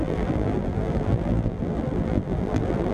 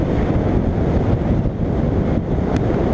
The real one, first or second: second